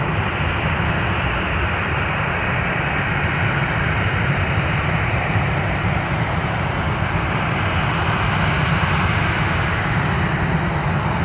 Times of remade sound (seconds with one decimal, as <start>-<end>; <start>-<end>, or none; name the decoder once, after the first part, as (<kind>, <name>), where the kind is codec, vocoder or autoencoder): 3.6-6.8 (vocoder, BigVGAN v2)

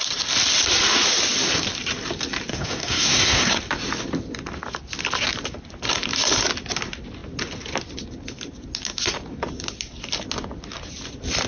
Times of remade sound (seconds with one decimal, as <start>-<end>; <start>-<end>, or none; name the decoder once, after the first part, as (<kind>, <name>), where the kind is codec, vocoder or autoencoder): 2.5-3.6 (codec, SNAC)

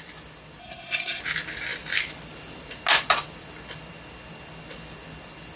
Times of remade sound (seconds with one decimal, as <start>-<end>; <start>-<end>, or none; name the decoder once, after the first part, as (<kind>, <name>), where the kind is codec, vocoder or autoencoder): 0.6-1.2 (codec, SNAC)

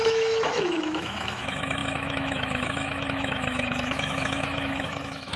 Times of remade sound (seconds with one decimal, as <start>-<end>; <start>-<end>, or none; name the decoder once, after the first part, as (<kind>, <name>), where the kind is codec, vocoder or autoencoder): 0.0-5.4 (autoencoder, DAC-VAE)